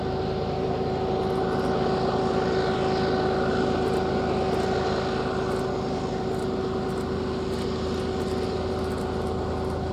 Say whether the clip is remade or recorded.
recorded